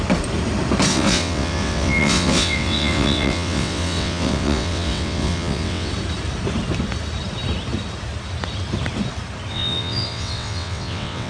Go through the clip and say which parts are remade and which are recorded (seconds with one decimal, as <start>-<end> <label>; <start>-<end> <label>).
0.0-0.9 recorded; 0.9-5.9 remade; 5.9-9.5 recorded; 9.5-11.3 remade